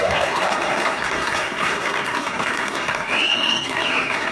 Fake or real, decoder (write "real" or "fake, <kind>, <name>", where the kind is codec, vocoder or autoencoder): fake, codec, SNAC